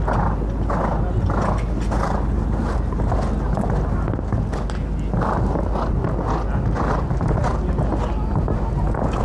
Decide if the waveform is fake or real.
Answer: real